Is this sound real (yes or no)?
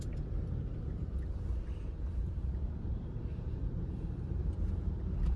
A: no